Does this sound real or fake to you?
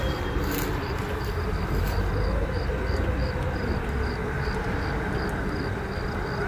real